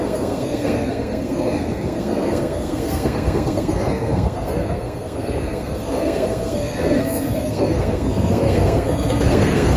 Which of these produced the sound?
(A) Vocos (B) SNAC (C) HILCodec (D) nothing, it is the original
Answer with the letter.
B